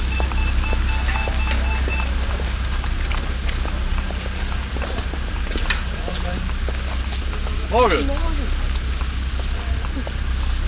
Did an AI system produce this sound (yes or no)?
no